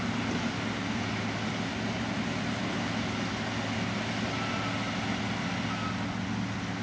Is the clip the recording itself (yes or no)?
yes